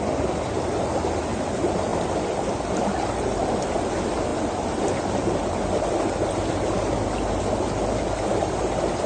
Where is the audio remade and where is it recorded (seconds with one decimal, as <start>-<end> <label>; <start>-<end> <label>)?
0.0-9.1 recorded